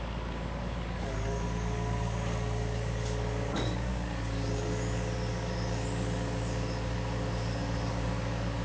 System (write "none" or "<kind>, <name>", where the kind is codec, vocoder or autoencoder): codec, DAC